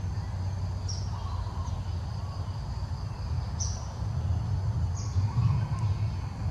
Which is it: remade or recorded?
recorded